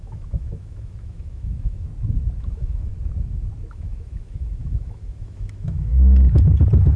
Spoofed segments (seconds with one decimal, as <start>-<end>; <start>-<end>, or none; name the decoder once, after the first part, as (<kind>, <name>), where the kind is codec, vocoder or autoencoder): 0.0-1.9 (autoencoder, DAC-VAE); 2.4-2.9; 3.7-5.9